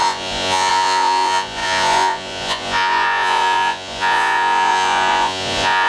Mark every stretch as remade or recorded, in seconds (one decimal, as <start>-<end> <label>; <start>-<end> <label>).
0.0-5.9 remade